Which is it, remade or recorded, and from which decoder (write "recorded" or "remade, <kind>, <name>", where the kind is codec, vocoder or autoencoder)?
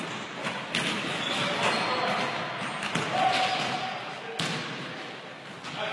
recorded